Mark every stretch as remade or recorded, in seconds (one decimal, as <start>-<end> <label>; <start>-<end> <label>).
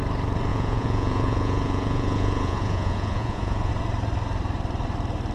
0.0-0.5 recorded; 0.5-3.7 remade; 3.7-5.3 recorded